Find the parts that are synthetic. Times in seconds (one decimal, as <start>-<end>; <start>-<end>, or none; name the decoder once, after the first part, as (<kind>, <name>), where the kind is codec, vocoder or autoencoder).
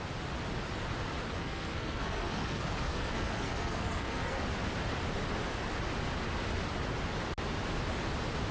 1.4-4.4 (codec, SNAC)